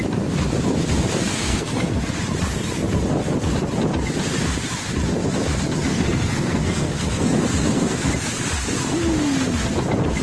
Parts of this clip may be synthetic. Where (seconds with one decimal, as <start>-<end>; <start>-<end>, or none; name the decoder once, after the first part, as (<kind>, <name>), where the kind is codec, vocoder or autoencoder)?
1.3-2.1 (codec, SNAC); 5.9-8.1